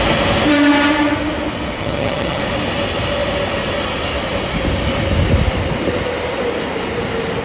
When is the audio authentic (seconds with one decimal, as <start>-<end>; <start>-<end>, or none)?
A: 0.0-1.8; 2.4-7.4